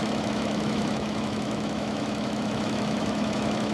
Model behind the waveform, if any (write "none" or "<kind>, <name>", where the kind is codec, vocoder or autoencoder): autoencoder, DAC-VAE